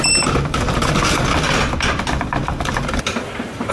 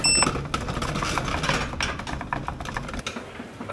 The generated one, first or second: first